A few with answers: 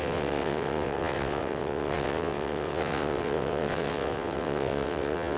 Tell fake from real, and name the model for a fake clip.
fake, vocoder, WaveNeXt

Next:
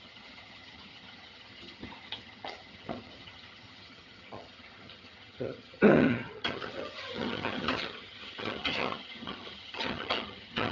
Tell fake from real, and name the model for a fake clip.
fake, vocoder, HiFi-GAN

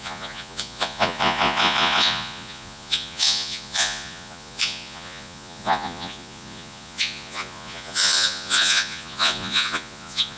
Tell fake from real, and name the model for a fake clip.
fake, vocoder, Vocos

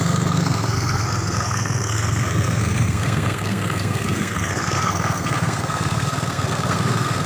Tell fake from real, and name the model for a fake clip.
fake, codec, SNAC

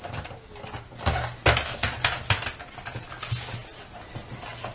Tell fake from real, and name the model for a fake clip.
real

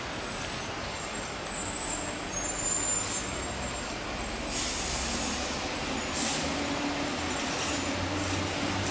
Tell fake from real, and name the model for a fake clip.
real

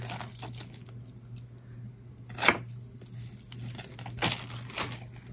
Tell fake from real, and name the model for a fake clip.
real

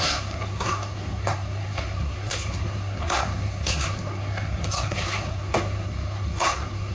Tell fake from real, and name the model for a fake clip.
fake, codec, SNAC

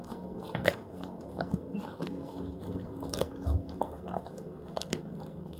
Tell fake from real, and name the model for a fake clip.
fake, codec, SNAC